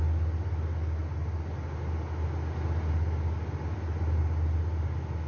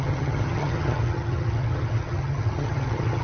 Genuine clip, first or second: first